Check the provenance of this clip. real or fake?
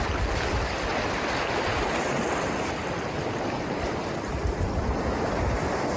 real